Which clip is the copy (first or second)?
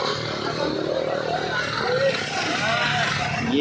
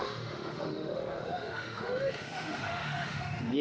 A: second